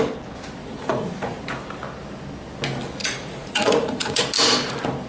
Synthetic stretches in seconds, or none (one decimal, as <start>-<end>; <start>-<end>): 0.6-1.4; 3.0-4.2